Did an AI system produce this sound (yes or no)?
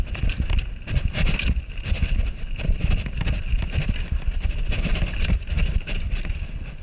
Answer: no